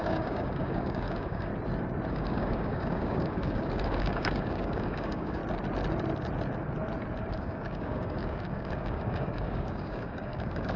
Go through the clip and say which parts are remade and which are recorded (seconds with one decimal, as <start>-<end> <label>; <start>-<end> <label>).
0.0-1.5 remade; 1.5-2.1 recorded; 2.1-5.4 remade; 5.4-7.3 recorded; 7.3-10.8 remade